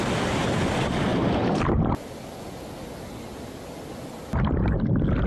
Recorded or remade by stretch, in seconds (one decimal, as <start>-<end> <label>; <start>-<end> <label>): 0.0-5.3 recorded